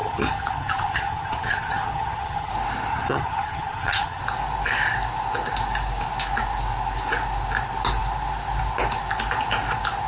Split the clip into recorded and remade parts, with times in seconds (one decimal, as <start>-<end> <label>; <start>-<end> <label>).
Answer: 0.0-2.5 remade; 2.5-2.9 recorded; 2.9-4.2 remade; 4.2-10.1 recorded